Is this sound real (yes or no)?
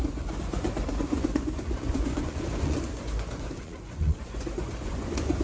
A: no